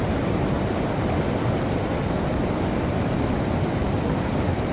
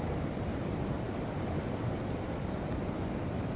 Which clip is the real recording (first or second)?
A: first